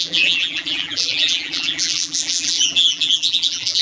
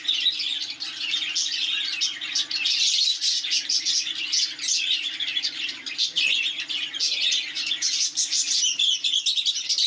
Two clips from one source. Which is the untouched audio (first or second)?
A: second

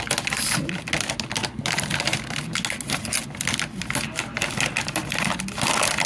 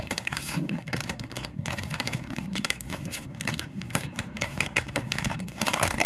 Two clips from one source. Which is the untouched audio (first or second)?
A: first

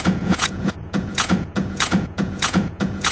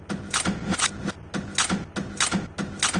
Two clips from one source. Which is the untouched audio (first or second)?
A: second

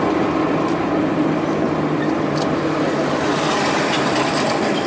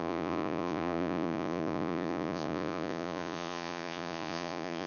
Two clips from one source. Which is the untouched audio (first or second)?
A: first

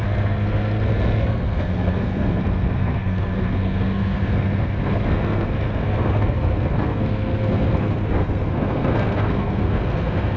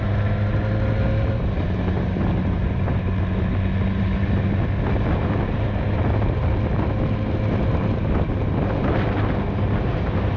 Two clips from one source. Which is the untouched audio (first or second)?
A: second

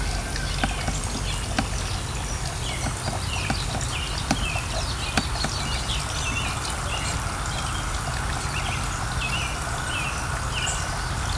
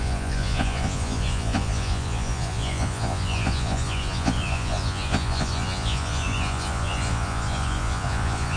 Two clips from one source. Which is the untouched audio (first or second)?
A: first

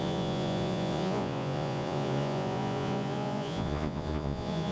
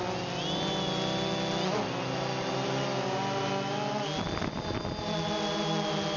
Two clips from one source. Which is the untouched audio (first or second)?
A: second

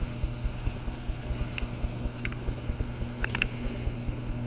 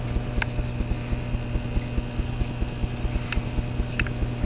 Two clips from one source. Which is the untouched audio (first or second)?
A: second